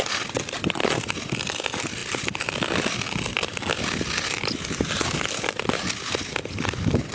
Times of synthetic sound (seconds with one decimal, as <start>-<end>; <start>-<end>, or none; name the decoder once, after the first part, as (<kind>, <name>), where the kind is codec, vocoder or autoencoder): none